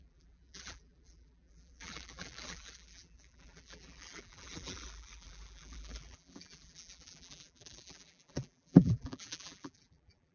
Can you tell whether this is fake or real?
fake